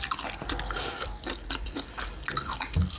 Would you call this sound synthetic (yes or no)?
yes